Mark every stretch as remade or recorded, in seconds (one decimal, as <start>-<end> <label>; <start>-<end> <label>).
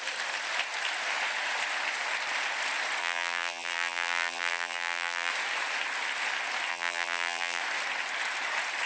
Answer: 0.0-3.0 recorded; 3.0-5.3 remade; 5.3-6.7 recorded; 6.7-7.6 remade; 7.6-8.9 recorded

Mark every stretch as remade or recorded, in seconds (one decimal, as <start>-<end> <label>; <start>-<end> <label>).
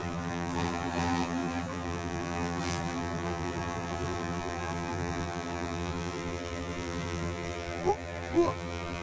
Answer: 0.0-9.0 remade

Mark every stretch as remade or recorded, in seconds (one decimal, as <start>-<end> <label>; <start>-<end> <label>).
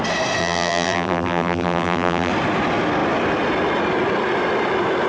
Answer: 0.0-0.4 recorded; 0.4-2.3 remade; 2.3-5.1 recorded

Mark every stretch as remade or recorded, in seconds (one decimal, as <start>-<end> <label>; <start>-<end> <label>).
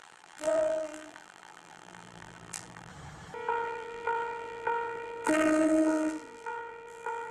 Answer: 0.0-2.9 remade; 2.9-3.5 recorded; 3.5-7.3 remade